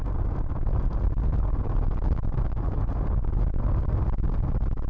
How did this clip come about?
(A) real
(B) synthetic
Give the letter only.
A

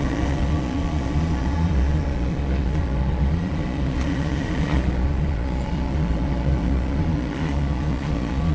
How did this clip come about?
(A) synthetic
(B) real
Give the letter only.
A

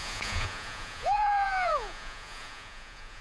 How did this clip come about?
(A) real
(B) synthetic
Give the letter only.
B